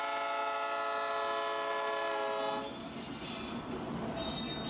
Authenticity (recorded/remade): recorded